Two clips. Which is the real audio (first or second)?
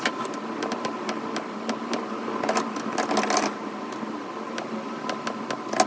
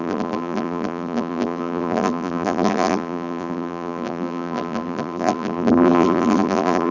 first